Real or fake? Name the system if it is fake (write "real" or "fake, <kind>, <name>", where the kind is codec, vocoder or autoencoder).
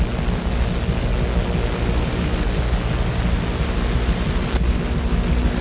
real